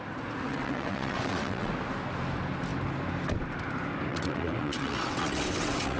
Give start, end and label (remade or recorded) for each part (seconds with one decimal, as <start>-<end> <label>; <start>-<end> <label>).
0.0-0.5 recorded; 0.5-1.7 remade; 1.7-4.1 recorded; 4.1-6.0 remade